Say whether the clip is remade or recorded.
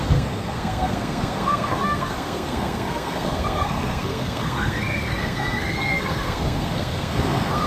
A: remade